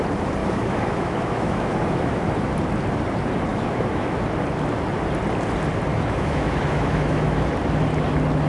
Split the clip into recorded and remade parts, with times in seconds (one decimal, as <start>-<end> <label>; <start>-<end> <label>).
0.0-0.4 recorded; 0.4-2.5 remade; 2.5-3.5 recorded; 3.5-4.2 remade; 4.2-5.9 recorded; 5.9-7.5 remade; 7.5-8.5 recorded

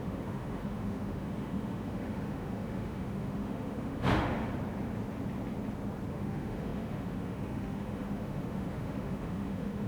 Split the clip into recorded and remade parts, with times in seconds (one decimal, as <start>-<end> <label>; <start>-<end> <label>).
0.0-4.5 remade; 4.5-6.1 recorded; 6.1-9.9 remade

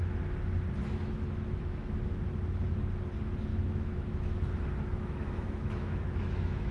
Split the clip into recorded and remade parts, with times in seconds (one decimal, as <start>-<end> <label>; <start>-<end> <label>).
0.0-0.9 recorded; 0.9-2.2 remade; 2.2-3.5 recorded; 3.5-6.7 remade

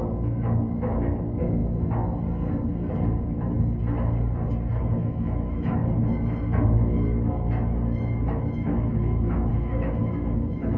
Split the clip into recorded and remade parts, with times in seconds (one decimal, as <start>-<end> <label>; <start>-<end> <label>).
0.0-1.6 remade; 1.6-4.8 recorded; 4.8-5.8 remade; 5.8-8.0 recorded; 8.0-10.8 remade

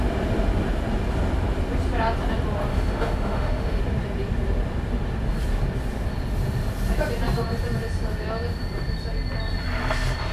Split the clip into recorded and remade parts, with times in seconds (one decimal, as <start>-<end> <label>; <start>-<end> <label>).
0.0-2.7 recorded; 2.7-3.8 remade; 3.8-10.3 recorded

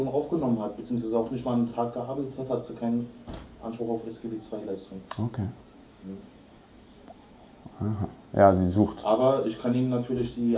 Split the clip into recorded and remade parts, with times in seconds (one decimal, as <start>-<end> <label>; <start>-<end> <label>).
0.0-1.7 remade; 1.7-3.8 recorded; 3.8-10.6 remade

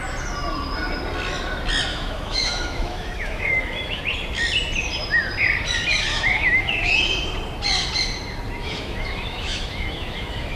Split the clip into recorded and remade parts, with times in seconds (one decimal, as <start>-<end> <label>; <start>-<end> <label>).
0.0-1.9 recorded; 1.9-4.0 remade; 4.0-6.1 recorded; 6.1-6.9 remade; 6.9-8.6 recorded; 8.6-10.6 remade